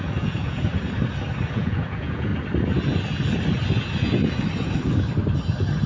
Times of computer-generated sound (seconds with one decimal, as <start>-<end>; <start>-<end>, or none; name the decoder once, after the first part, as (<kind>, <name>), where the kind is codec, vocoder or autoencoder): 0.0-0.7 (vocoder, Vocos); 1.5-2.3